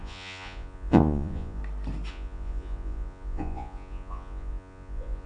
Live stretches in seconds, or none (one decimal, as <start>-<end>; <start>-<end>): 1.6-2.1